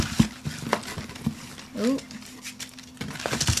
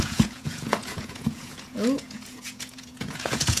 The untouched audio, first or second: first